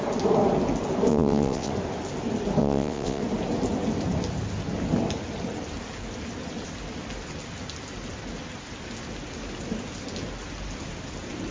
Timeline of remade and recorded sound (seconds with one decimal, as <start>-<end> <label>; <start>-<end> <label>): 0.0-1.1 recorded; 1.1-1.7 remade; 1.7-2.6 recorded; 2.6-3.2 remade; 3.2-11.5 recorded